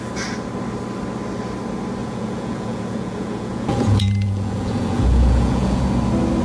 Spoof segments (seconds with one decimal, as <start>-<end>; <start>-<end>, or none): 2.0-5.8